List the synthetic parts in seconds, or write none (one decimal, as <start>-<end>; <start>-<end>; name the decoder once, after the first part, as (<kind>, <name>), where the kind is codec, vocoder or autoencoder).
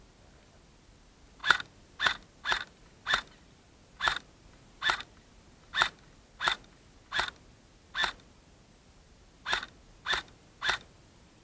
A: 1.4-2.0 (vocoder, BigVGAN v2)